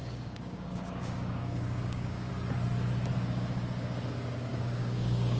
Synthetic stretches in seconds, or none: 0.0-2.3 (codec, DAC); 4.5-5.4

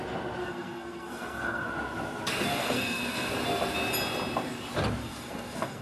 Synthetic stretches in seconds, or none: 0.4-1.7 (codec, SNAC); 2.5-3.3; 5.0-5.8

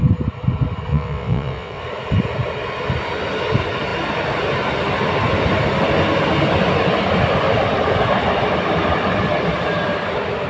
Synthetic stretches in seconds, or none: 0.9-1.8 (vocoder, WaveNeXt)

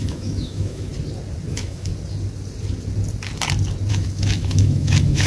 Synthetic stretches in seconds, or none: 0.0-0.9 (autoencoder, DAC-VAE); 1.5-1.9; 3.9-5.3

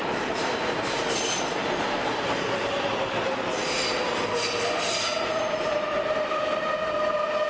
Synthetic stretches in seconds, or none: none

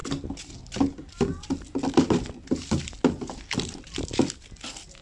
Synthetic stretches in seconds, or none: none

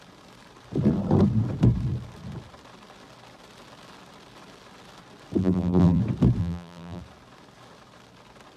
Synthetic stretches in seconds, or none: 5.4-6.0 (vocoder, BigVGAN v2); 6.4-7.0

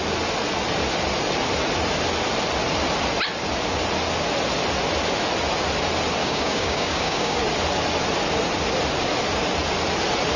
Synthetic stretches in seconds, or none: 6.2-7.4 (codec, DAC)